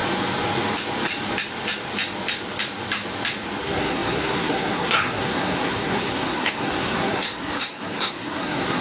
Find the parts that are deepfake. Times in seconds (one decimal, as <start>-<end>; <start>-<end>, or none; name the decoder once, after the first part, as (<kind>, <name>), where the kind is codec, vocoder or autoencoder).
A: 3.6-8.8 (codec, SNAC)